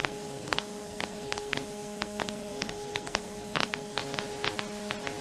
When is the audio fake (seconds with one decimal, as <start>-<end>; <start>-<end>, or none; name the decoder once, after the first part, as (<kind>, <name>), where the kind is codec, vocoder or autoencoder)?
0.0-4.0 (codec, SNAC)